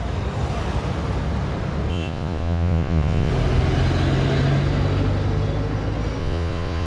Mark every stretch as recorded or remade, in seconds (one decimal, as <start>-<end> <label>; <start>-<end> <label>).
0.0-1.9 recorded; 1.9-3.3 remade; 3.3-6.2 recorded; 6.2-6.9 remade